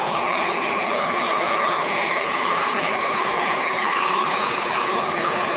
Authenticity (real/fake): fake